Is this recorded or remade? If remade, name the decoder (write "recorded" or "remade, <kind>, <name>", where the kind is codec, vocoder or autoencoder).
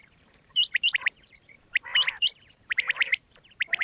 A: remade, vocoder, BigVGAN v2